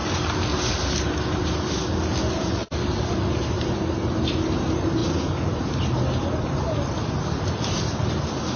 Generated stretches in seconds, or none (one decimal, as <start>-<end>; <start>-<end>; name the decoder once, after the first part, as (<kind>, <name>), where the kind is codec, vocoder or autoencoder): none